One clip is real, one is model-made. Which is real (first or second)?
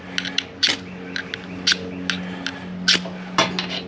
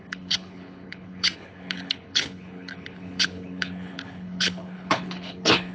first